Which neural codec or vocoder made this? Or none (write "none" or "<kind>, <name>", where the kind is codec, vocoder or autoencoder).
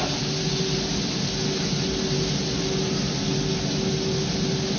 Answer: none